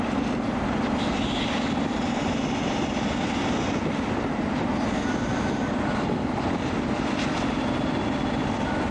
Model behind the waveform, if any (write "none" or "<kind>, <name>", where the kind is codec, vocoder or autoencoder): none